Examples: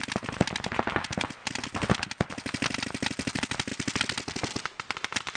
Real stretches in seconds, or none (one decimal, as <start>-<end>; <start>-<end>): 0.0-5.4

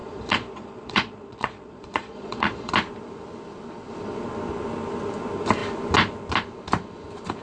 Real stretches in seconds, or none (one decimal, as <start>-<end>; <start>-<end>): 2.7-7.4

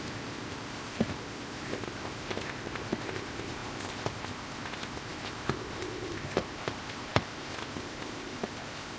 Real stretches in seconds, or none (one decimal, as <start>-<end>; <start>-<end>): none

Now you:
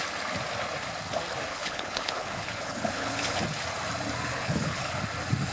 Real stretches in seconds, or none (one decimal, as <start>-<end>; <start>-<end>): 0.0-1.5; 3.4-4.3; 4.9-5.5

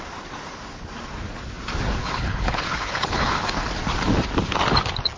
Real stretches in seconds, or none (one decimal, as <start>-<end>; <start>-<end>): 0.0-2.0; 3.5-5.2

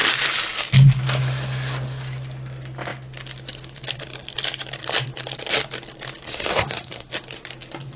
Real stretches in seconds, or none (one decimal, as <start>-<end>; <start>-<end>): 0.0-6.3; 7.1-8.0

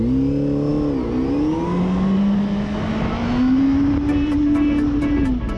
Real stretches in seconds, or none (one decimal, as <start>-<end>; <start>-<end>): 0.0-5.6